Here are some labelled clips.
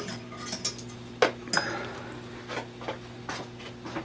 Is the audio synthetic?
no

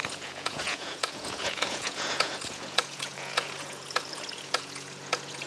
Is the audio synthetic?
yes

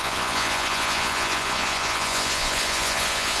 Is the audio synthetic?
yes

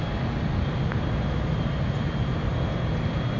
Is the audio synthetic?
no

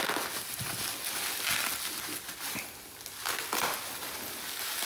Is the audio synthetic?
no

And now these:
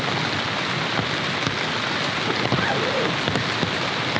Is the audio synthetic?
no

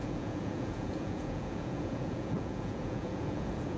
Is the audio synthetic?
yes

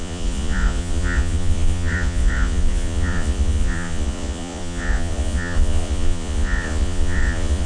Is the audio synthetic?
yes